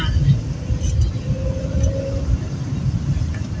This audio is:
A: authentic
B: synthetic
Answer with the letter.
A